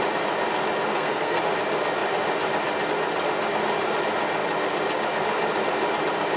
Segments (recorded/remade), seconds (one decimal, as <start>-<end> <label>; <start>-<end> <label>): 0.0-0.9 recorded; 0.9-1.4 remade; 1.4-6.4 recorded